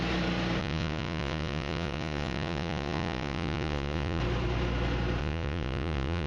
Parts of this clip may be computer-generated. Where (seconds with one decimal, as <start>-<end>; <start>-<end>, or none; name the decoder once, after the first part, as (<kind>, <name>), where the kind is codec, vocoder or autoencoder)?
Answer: 0.6-4.2 (vocoder, Vocos); 5.2-6.3